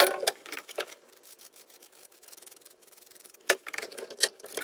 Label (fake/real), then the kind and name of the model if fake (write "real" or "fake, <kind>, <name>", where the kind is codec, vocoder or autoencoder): fake, codec, DAC